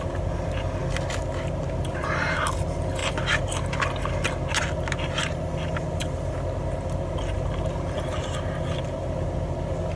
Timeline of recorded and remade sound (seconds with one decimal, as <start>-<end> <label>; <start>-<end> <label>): 0.0-10.0 recorded